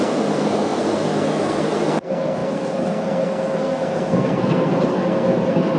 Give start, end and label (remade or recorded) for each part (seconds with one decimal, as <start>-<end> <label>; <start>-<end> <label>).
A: 0.0-5.8 remade